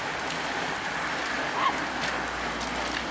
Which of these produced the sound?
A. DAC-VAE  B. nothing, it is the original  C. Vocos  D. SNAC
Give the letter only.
B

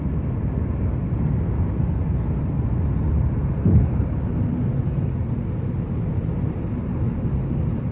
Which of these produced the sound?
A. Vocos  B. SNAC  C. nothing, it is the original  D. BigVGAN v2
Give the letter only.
C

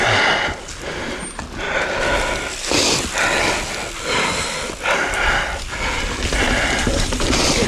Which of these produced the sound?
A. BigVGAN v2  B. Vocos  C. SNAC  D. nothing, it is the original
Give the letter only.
D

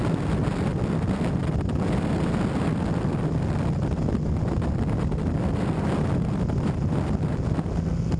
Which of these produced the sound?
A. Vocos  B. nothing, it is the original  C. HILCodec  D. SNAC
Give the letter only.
B